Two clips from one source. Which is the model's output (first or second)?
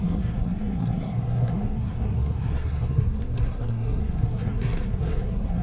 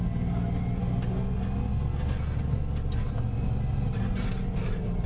first